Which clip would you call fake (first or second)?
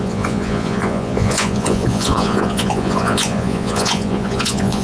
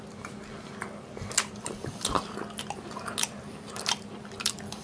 first